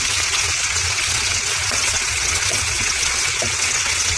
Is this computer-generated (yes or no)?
yes